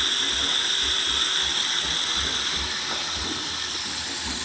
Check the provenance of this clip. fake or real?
real